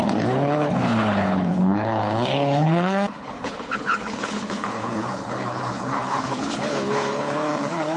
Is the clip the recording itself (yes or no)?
no